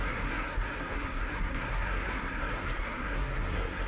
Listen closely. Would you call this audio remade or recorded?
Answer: remade